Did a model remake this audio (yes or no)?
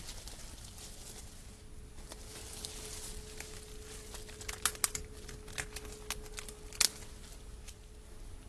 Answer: no